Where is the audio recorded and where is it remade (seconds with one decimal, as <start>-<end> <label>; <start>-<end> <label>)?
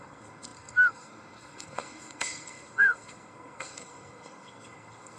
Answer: 0.0-5.2 remade